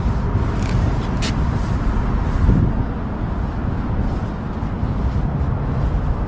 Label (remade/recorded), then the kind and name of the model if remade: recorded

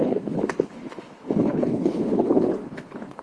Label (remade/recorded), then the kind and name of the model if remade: remade, codec, HILCodec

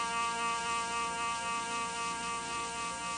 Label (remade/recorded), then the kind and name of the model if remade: recorded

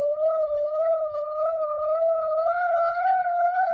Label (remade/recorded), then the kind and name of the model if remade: remade, codec, HILCodec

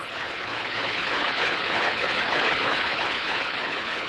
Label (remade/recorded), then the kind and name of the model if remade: remade, codec, HILCodec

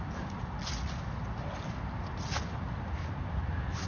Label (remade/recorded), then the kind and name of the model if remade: recorded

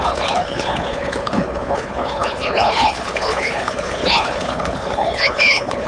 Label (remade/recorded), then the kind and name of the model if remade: remade, codec, HILCodec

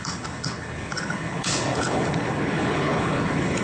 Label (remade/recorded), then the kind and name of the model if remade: remade, codec, HILCodec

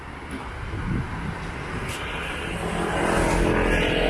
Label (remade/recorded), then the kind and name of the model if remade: recorded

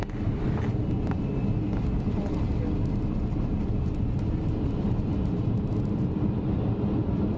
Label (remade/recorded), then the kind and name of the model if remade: recorded